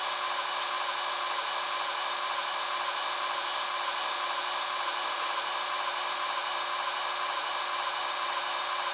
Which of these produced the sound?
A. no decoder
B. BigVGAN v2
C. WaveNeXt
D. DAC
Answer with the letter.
A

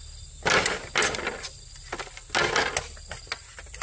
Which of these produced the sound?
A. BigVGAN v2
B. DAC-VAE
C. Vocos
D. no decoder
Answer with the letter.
D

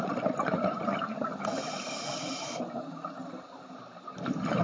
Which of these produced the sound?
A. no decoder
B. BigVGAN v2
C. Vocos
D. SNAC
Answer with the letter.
B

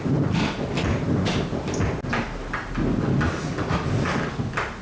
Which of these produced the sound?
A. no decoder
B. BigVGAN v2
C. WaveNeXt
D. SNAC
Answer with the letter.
A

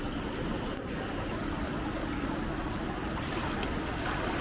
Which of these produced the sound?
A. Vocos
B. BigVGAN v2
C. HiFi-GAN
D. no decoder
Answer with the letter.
D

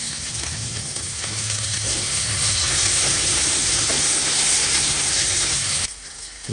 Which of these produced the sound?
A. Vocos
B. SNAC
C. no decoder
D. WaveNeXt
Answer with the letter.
B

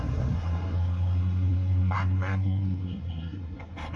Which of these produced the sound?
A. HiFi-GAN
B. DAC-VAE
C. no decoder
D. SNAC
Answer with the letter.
D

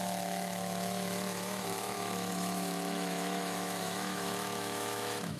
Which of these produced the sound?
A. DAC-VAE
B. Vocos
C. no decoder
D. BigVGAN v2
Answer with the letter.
A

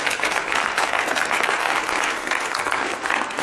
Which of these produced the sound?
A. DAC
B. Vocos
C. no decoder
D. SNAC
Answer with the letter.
D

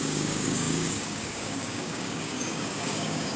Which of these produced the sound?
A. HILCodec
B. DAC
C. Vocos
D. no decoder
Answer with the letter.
B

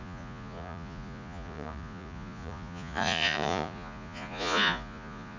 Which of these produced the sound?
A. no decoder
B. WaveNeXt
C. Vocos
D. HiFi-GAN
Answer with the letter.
C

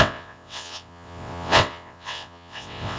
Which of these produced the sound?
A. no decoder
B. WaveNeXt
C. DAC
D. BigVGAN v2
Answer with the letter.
B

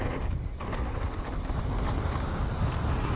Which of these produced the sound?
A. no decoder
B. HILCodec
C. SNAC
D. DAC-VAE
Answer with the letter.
A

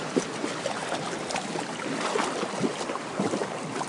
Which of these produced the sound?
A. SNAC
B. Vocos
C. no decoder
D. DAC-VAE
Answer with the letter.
C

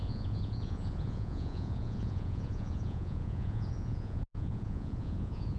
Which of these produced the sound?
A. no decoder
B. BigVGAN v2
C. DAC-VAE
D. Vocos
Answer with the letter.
D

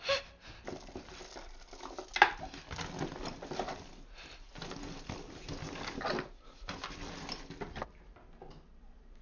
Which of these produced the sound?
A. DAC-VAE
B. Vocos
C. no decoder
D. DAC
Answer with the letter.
C